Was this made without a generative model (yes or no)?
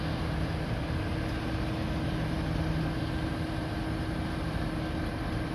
yes